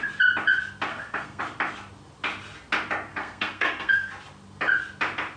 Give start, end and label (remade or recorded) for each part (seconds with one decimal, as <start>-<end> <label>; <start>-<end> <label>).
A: 0.0-0.9 recorded; 0.9-1.4 remade; 1.4-3.1 recorded; 3.1-4.1 remade; 4.1-5.4 recorded